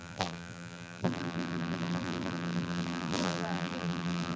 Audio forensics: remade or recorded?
remade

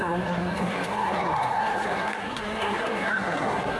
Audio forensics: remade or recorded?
remade